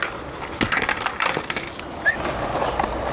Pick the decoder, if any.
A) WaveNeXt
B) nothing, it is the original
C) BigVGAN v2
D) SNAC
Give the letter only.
B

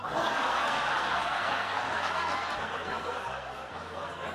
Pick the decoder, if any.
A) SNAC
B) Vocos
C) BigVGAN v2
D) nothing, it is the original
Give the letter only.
A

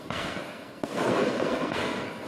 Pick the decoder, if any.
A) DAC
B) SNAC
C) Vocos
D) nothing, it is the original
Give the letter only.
B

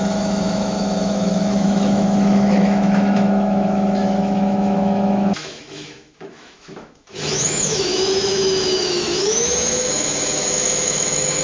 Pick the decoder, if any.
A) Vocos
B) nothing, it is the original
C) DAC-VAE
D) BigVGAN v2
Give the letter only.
C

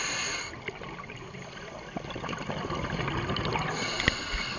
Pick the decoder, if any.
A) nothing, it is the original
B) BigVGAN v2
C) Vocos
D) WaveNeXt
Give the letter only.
A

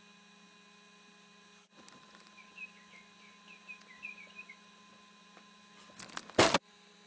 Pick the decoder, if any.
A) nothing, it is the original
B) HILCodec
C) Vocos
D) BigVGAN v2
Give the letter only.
A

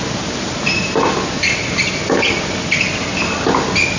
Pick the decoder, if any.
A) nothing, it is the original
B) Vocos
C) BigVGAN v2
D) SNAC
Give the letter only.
A